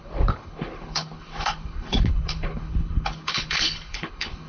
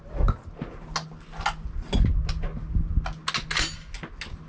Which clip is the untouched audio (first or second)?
second